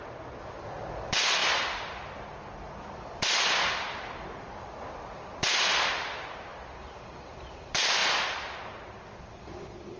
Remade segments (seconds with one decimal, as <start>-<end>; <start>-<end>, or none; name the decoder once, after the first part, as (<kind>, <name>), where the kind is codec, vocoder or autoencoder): none